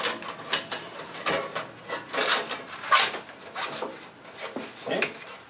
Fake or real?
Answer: real